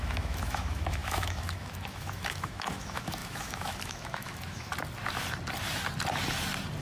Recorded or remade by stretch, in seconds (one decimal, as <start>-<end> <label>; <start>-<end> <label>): 0.0-4.7 remade; 4.7-6.8 recorded